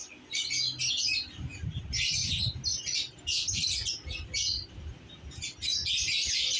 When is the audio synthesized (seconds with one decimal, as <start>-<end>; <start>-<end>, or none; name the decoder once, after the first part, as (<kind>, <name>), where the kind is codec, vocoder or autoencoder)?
none